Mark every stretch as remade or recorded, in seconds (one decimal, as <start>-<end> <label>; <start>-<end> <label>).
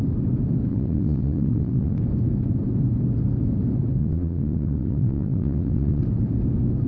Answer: 0.0-0.7 recorded; 0.7-2.0 remade; 2.0-4.0 recorded; 4.0-6.0 remade; 6.0-6.9 recorded